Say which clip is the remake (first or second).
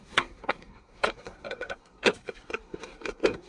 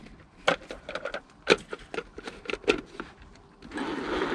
first